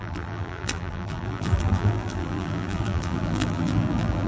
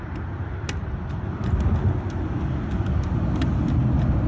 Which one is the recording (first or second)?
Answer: second